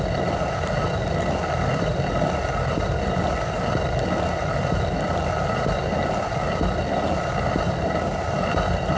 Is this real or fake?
real